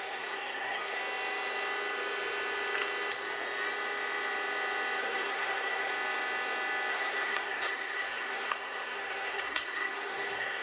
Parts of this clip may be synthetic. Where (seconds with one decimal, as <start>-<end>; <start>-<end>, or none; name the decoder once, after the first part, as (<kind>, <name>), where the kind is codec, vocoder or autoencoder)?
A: 0.0-1.0 (codec, SNAC); 5.0-5.9; 6.9-10.6